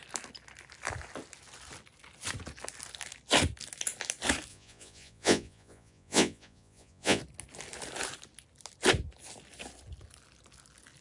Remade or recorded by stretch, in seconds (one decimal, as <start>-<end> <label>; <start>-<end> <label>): 0.0-4.5 recorded; 4.5-7.2 remade; 7.2-11.0 recorded